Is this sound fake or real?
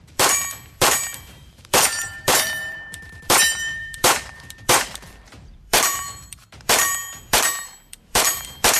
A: fake